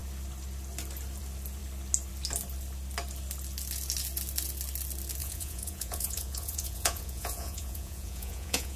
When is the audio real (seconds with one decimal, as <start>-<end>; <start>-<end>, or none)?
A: 0.0-5.2